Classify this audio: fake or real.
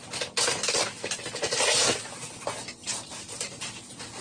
real